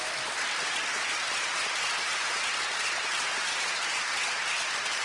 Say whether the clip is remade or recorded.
recorded